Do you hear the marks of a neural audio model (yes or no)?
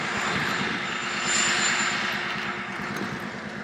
no